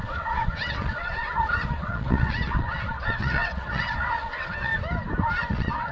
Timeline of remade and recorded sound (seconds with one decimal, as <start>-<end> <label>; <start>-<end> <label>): 0.0-4.7 remade; 4.7-5.4 recorded; 5.4-5.9 remade